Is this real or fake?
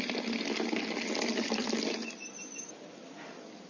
fake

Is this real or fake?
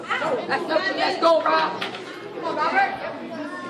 real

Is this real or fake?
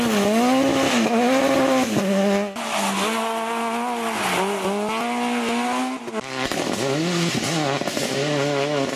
real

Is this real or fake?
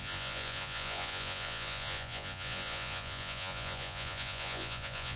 fake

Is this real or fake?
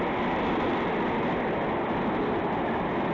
real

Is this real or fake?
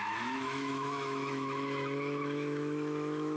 fake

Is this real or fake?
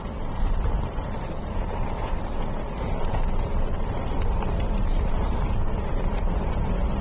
fake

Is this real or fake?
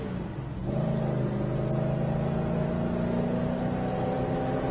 real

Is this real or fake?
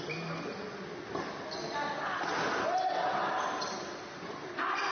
real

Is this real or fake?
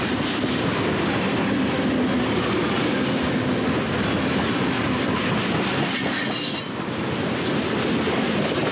real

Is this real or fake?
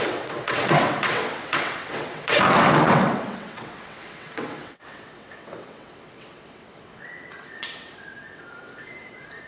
fake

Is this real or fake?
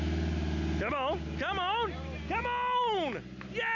real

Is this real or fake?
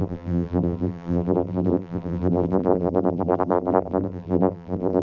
fake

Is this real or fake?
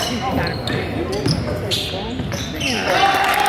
real